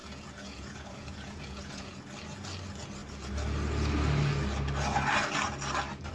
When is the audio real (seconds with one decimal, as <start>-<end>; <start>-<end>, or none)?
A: 2.0-6.1